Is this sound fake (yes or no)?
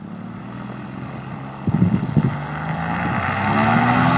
no